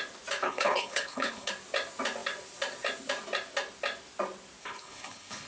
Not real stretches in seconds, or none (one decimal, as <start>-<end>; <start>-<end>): 0.4-1.5; 4.6-5.5